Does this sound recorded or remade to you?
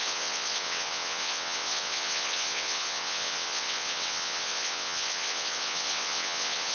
remade